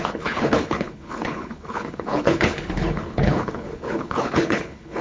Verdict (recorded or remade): remade